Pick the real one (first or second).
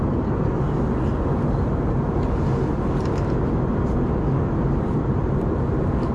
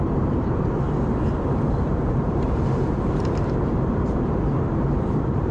first